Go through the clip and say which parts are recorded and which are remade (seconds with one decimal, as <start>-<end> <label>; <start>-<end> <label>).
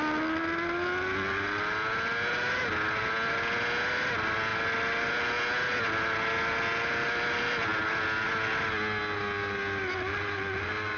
0.0-11.0 recorded